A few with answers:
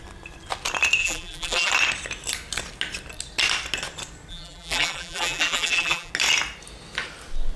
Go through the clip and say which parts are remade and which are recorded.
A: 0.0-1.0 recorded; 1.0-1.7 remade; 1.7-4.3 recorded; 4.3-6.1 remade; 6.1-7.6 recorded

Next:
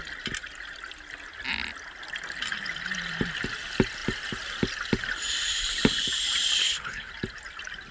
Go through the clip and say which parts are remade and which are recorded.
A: 0.0-6.6 recorded; 6.6-7.1 remade; 7.1-7.9 recorded